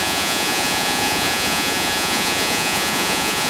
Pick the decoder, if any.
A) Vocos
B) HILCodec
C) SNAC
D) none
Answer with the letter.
A